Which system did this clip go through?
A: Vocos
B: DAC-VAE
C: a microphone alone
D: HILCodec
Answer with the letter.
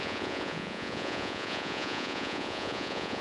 A